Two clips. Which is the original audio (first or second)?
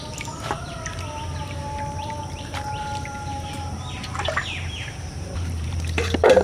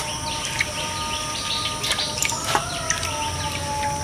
second